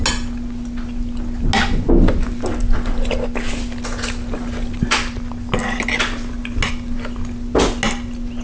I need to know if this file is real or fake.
real